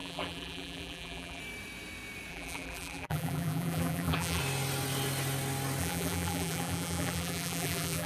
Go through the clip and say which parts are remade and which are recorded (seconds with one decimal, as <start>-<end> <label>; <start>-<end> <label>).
0.0-1.4 remade; 1.4-2.3 recorded; 2.3-4.4 remade; 4.4-5.8 recorded; 5.8-8.1 remade